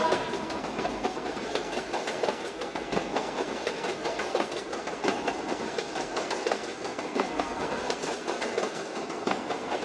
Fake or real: fake